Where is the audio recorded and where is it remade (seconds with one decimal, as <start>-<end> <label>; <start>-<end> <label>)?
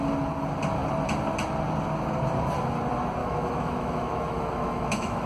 0.0-3.2 recorded; 3.2-5.3 remade